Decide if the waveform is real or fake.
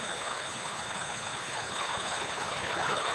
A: fake